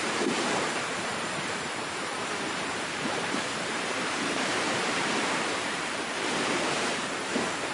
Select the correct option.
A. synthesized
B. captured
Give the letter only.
A